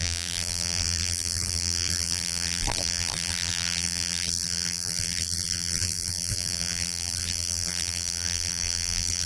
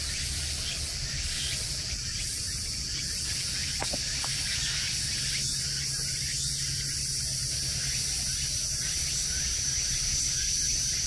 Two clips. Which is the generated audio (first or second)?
first